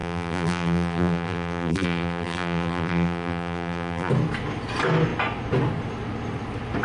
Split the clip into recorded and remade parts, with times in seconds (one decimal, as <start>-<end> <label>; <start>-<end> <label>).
0.0-4.1 remade; 4.1-6.8 recorded